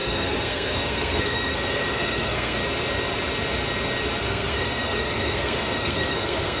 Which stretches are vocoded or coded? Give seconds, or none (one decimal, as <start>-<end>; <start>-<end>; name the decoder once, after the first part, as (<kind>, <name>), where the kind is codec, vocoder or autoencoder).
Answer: 0.0-2.6 (codec, SNAC); 4.2-6.6